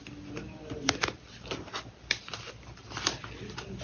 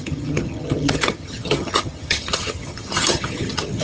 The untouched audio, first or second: first